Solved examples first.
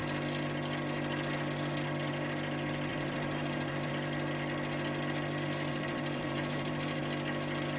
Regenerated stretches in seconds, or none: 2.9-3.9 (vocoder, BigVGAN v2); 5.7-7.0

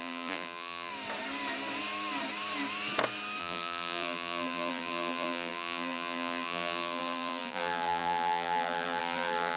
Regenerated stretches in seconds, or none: 0.0-0.9 (vocoder, BigVGAN v2); 3.4-9.6

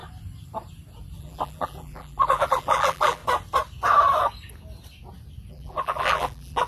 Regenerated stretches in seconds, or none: 1.2-3.2 (vocoder, BigVGAN v2); 5.5-6.7

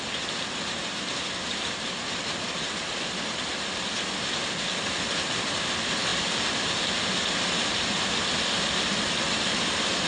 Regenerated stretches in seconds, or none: 1.5-2.2 (vocoder, BigVGAN v2)

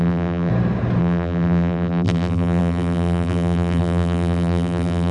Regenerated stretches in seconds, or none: 0.0-0.5 (vocoder, BigVGAN v2); 1.0-5.1

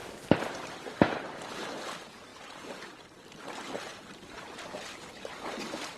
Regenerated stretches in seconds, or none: 2.3-3.4 (vocoder, BigVGAN v2); 3.9-4.7

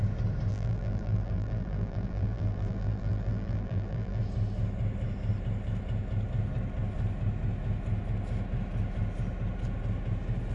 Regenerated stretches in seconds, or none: 0.5-4.2 (vocoder, BigVGAN v2)